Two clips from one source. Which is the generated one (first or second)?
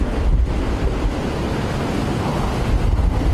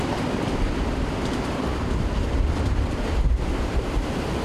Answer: second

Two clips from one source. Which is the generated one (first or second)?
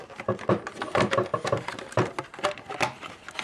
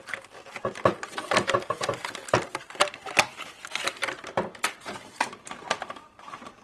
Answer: second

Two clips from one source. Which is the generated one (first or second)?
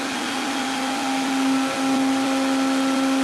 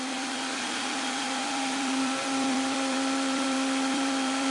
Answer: second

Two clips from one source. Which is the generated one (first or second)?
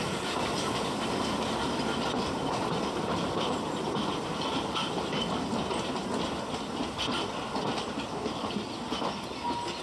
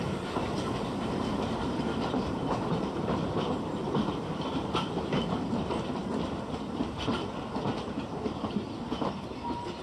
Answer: second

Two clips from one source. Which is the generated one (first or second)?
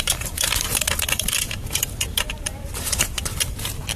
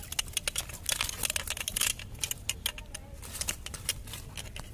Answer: first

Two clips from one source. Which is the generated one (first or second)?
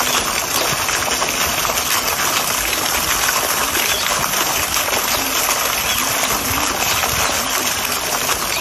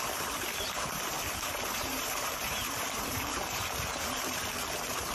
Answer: second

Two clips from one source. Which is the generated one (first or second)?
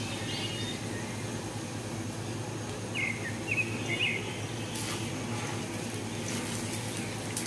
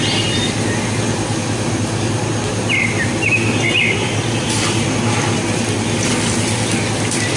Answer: second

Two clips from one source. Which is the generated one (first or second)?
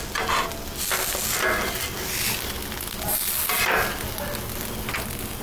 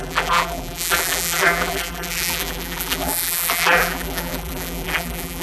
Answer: second